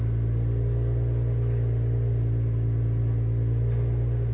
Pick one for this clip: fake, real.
real